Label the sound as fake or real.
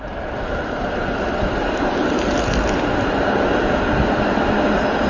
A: real